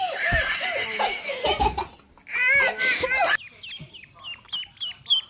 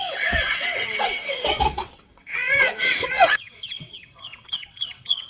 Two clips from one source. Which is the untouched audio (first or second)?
first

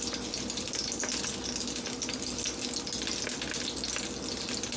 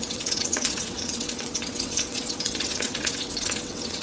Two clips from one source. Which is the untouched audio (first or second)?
first